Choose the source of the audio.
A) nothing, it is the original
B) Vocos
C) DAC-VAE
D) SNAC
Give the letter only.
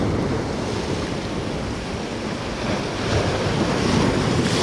A